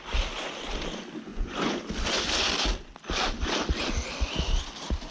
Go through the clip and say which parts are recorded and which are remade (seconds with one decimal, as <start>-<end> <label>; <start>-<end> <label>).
0.0-1.3 recorded; 1.3-1.8 remade; 1.8-5.1 recorded